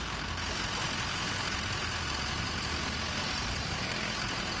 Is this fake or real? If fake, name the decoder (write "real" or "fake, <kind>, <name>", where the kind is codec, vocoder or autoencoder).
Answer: real